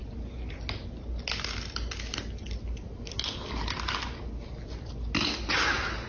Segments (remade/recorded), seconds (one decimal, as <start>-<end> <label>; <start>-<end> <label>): 0.0-6.1 recorded